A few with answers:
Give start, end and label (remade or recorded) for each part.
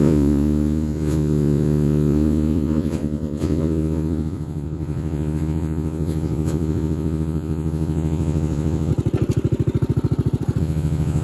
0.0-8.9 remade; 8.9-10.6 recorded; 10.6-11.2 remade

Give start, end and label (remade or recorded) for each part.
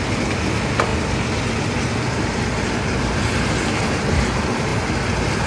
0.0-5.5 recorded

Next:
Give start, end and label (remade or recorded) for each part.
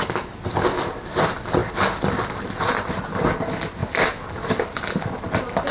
0.0-5.7 recorded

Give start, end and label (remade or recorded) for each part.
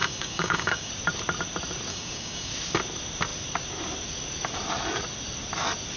0.0-0.9 remade; 0.9-1.9 recorded; 1.9-2.5 remade; 2.5-6.0 recorded